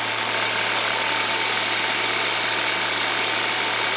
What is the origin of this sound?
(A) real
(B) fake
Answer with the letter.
A